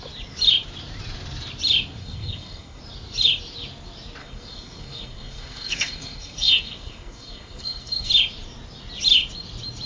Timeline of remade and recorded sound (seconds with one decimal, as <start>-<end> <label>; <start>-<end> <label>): 0.0-2.0 recorded; 2.0-2.8 remade; 2.8-4.2 recorded; 4.2-8.1 remade; 8.1-9.9 recorded